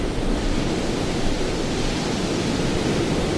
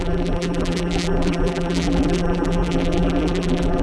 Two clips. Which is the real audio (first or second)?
first